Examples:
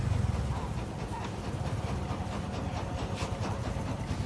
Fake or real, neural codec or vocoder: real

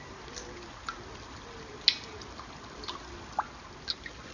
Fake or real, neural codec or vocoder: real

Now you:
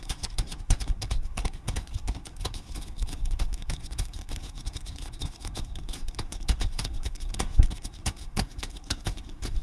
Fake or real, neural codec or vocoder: fake, codec, SNAC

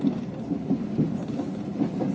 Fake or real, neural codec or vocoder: real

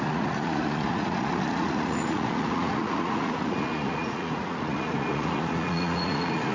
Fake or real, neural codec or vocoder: fake, vocoder, Vocos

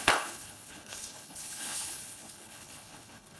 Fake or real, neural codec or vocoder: fake, codec, HILCodec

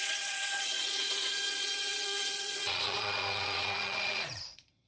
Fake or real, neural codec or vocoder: fake, vocoder, Vocos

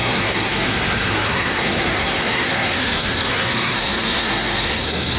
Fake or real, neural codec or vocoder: fake, codec, SNAC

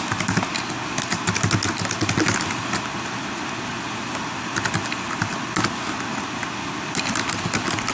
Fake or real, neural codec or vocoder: real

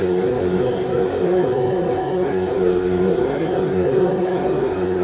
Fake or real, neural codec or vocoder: fake, codec, SNAC